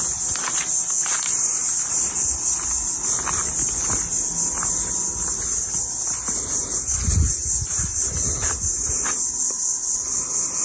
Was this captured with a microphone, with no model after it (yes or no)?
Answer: yes